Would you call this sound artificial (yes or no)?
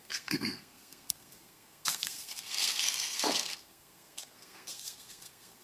yes